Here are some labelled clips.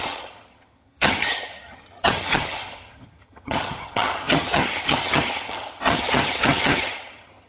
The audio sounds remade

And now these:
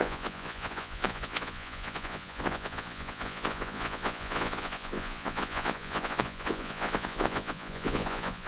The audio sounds remade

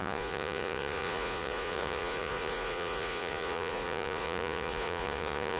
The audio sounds remade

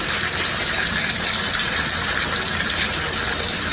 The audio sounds recorded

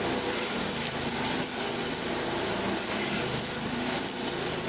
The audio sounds recorded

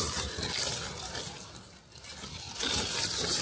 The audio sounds recorded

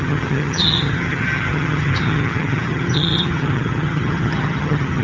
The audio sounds remade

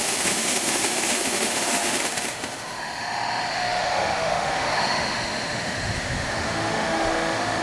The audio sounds remade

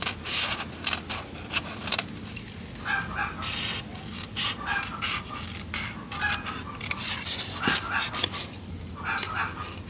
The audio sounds recorded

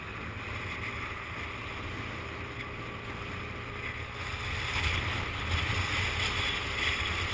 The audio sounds recorded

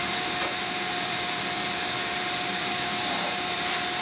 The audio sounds remade